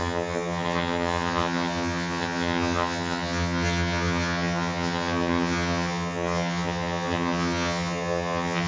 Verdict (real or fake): fake